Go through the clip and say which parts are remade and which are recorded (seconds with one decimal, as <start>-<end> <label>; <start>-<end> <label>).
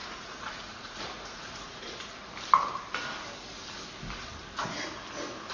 0.0-2.0 remade; 2.0-5.5 recorded